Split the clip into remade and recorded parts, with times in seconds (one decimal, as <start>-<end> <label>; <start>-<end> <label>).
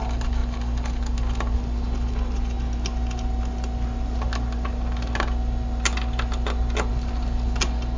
0.0-8.0 recorded